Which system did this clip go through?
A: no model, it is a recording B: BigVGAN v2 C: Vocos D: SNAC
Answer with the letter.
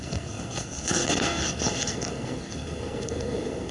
D